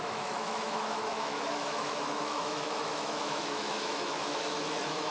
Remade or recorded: remade